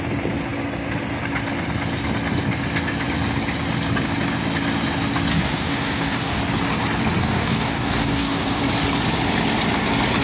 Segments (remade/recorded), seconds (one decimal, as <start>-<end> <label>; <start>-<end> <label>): 0.0-5.3 recorded; 5.3-6.4 remade; 6.4-7.2 recorded; 7.2-8.6 remade; 8.6-10.2 recorded